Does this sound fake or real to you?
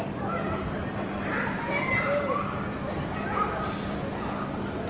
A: real